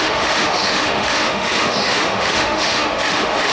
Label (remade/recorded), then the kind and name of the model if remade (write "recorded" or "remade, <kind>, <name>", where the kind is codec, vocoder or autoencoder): remade, autoencoder, DAC-VAE